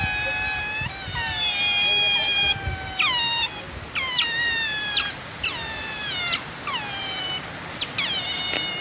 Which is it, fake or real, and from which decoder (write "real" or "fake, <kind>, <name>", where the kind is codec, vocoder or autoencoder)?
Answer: real